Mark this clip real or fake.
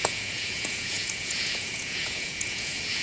fake